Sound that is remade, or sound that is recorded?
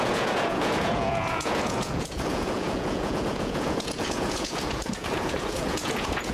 remade